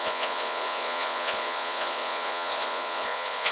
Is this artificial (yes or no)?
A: yes